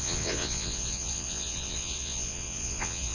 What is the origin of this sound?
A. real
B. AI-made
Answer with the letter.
B